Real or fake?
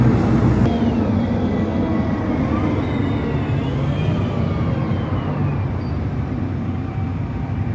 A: real